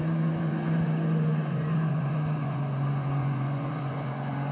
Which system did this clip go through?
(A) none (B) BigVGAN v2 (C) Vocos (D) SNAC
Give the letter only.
C